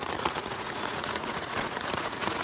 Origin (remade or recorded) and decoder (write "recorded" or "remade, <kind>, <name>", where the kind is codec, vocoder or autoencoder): remade, vocoder, Vocos